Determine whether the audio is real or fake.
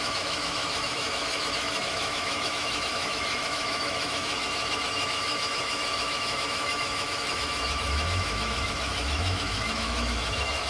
fake